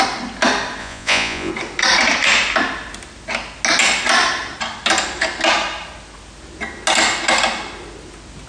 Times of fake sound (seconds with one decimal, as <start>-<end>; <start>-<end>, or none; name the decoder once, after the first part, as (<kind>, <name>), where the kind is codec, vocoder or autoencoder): 0.8-1.5 (vocoder, Vocos)